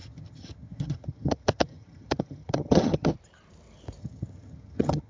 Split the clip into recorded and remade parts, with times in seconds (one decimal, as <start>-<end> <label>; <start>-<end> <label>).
0.0-3.1 remade; 3.1-4.0 recorded; 4.0-5.1 remade